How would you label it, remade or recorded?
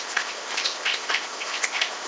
remade